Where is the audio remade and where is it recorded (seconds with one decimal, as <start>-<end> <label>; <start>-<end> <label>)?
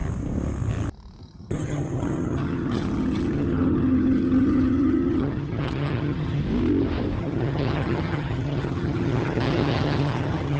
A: 0.0-1.2 recorded; 1.2-6.4 remade; 6.4-7.2 recorded; 7.2-10.6 remade